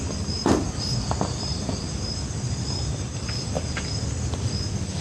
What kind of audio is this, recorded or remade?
recorded